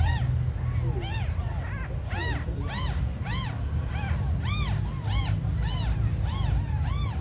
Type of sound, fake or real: real